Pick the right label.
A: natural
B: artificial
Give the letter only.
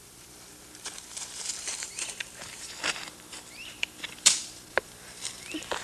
B